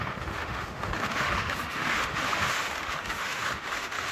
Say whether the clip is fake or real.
fake